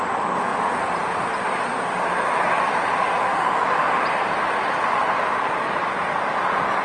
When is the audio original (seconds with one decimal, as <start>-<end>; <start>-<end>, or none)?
0.0-3.2; 4.0-6.8